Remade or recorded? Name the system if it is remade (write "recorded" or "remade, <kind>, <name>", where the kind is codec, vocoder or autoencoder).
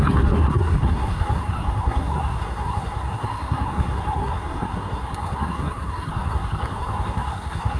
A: remade, codec, SNAC